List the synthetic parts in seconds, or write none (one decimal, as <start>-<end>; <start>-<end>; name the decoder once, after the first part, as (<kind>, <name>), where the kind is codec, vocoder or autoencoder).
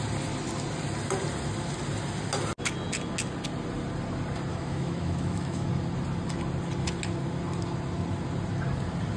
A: 4.5-5.7 (autoencoder, DAC-VAE)